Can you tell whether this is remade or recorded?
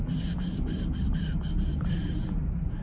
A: recorded